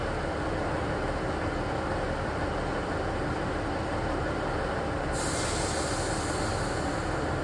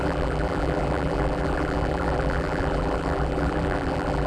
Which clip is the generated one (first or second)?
second